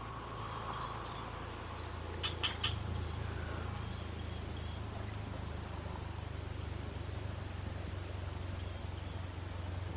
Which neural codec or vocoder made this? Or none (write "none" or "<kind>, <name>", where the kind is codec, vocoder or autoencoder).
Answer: none